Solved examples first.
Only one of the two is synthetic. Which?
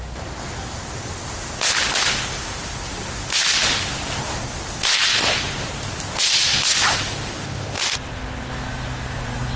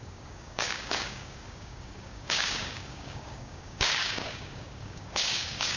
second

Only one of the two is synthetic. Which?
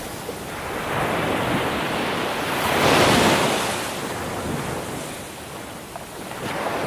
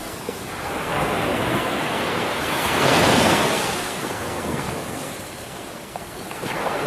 second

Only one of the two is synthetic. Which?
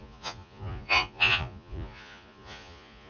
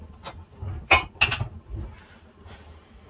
first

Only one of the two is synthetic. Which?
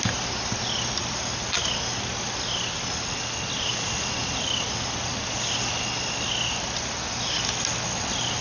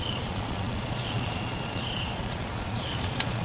second